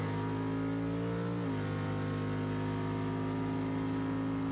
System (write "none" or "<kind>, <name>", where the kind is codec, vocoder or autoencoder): none